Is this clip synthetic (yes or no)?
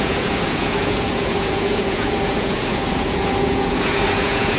yes